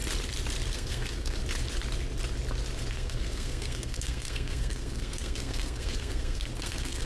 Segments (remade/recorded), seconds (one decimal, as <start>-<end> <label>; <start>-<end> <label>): 0.0-0.7 recorded; 0.7-1.4 remade; 1.4-2.9 recorded; 2.9-7.1 remade